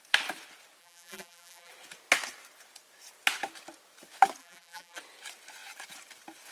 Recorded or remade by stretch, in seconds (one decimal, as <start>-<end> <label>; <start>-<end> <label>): 0.0-0.8 recorded; 0.8-1.7 remade; 1.7-4.4 recorded; 4.4-5.0 remade; 5.0-6.5 recorded